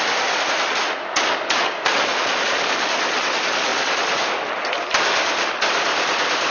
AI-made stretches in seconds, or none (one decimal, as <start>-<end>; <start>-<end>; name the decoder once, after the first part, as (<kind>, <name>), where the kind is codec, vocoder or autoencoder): 0.0-6.5 (vocoder, BigVGAN v2)